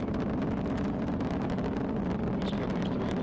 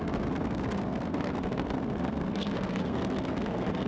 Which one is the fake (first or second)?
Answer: second